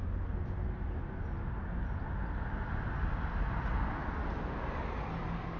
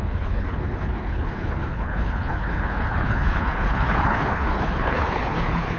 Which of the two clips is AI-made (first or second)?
second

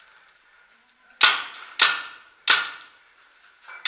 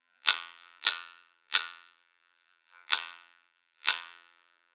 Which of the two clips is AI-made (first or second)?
second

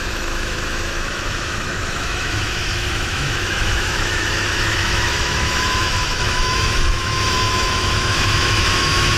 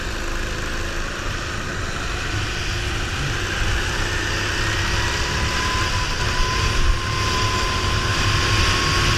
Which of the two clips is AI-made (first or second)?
first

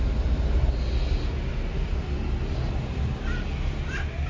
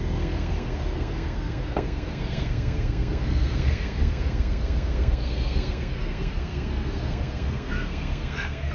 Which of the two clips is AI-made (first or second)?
second